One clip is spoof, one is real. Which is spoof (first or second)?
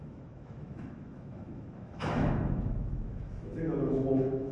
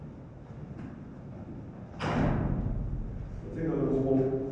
first